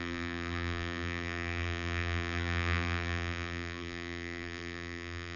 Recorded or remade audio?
remade